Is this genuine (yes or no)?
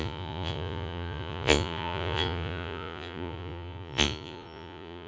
no